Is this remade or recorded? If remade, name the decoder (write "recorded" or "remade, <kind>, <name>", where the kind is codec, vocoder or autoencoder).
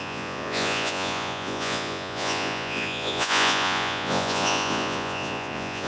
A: remade, vocoder, Vocos